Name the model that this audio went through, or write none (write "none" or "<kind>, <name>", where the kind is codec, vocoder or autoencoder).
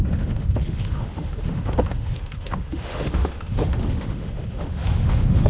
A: autoencoder, DAC-VAE